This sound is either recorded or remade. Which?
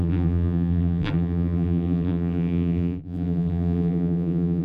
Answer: remade